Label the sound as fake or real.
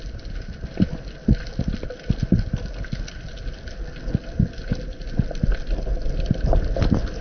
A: real